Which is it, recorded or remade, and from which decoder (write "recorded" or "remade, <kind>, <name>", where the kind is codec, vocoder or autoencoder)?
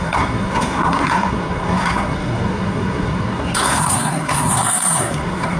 remade, codec, SNAC